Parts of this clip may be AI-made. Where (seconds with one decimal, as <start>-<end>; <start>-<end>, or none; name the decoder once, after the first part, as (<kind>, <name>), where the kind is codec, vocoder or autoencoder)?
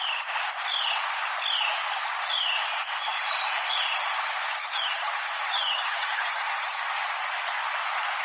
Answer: 4.6-6.8 (vocoder, HiFi-GAN)